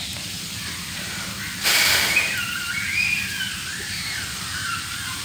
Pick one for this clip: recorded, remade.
remade